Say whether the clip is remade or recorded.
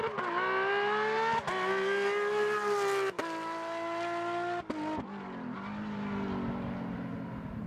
recorded